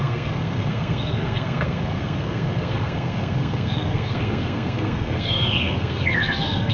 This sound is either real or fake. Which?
fake